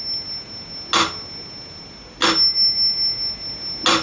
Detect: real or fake real